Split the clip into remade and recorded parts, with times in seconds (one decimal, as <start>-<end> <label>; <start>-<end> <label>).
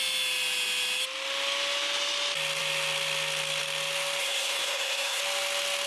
0.0-4.2 recorded; 4.2-5.2 remade; 5.2-5.9 recorded